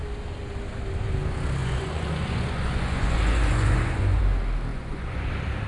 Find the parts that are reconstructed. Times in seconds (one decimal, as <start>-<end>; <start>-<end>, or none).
1.6-4.2; 4.7-5.3